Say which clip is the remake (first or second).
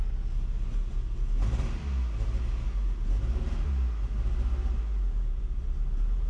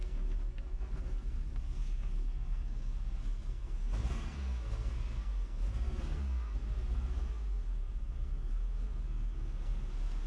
second